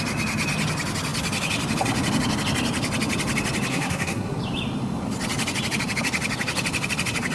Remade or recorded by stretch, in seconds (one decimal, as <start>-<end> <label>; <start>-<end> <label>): 0.0-3.7 recorded; 3.7-4.4 remade; 4.4-7.3 recorded